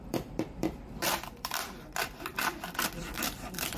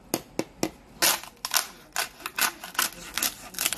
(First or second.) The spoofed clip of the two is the first